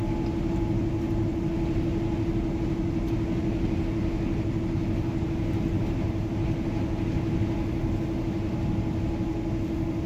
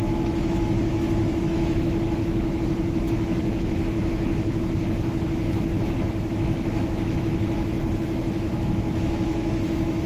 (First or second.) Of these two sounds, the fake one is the second